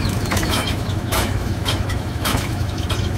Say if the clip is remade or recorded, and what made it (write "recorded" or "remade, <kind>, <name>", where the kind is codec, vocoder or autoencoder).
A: remade, autoencoder, DAC-VAE